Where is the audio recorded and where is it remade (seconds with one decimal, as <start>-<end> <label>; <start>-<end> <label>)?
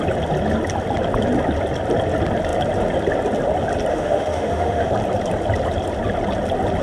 0.0-3.9 recorded; 3.9-4.9 remade; 4.9-6.8 recorded